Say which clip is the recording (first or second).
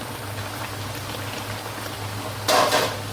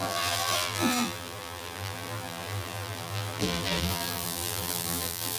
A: first